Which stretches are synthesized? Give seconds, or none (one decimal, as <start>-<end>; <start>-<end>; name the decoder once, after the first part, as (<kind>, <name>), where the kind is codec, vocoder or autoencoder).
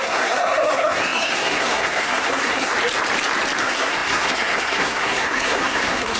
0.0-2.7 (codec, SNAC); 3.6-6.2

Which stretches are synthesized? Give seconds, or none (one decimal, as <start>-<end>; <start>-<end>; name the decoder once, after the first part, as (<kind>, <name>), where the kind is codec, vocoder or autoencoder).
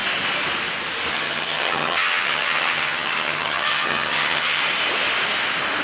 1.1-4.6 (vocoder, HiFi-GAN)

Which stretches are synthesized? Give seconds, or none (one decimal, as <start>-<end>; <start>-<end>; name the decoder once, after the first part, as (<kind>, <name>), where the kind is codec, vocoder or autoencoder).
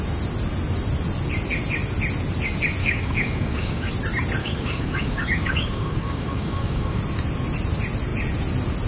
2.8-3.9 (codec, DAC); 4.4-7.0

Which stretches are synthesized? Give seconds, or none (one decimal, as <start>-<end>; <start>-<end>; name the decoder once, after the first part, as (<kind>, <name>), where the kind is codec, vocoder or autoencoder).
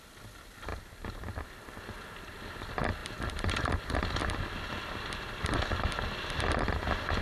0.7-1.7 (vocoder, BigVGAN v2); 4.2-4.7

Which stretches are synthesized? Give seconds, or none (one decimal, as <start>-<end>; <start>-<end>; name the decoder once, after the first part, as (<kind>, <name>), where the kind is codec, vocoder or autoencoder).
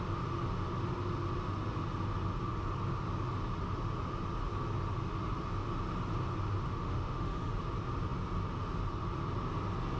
6.8-7.5 (autoencoder, DAC-VAE)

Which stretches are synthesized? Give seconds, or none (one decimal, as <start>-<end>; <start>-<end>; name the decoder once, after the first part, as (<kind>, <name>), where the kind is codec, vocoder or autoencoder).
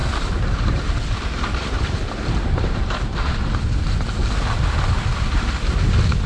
0.0-3.6 (vocoder, BigVGAN v2)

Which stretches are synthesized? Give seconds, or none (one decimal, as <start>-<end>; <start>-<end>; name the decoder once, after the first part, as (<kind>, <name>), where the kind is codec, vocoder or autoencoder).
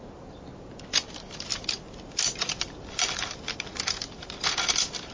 none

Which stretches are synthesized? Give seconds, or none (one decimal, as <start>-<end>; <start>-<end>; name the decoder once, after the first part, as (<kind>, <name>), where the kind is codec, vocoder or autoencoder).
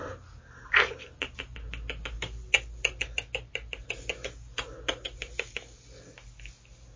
none